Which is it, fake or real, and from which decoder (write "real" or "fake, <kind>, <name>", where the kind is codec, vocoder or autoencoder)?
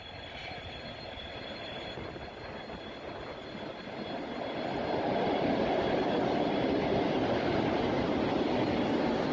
real